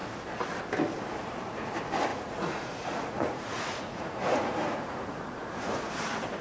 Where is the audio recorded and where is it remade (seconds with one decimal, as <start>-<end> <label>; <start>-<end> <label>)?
0.0-2.1 recorded; 2.1-5.9 remade; 5.9-6.4 recorded